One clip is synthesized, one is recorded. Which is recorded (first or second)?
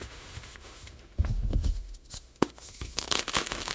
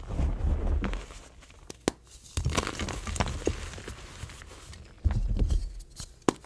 second